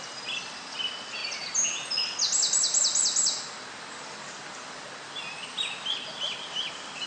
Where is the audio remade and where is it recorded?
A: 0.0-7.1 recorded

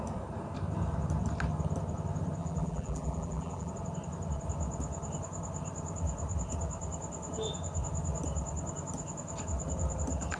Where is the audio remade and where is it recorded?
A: 0.0-2.4 recorded; 2.4-3.7 remade; 3.7-10.4 recorded

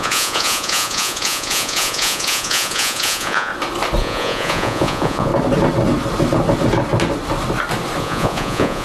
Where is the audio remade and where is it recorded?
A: 0.0-3.5 remade; 3.5-4.0 recorded; 4.0-5.3 remade; 5.3-8.0 recorded; 8.0-8.8 remade